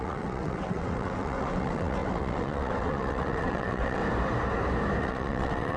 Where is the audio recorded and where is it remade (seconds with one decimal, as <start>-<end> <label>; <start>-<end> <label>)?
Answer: 0.0-4.0 remade; 4.0-5.0 recorded; 5.0-5.8 remade